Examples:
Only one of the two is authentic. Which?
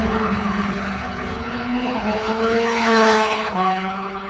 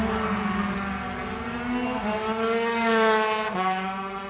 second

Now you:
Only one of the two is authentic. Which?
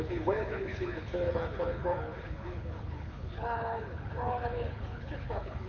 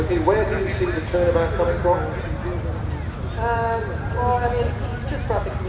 second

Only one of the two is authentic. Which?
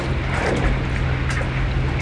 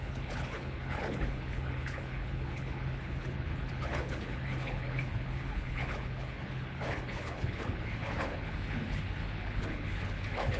first